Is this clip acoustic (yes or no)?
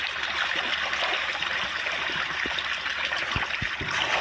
yes